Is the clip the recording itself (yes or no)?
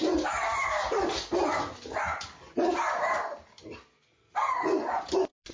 yes